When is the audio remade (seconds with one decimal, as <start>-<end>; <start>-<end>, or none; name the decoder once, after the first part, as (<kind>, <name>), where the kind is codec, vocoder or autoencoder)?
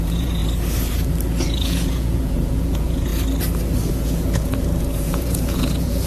0.0-0.4 (vocoder, Vocos); 1.4-3.1; 3.9-6.1